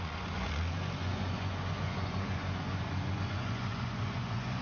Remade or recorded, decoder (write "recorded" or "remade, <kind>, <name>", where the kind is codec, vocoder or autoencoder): remade, vocoder, Vocos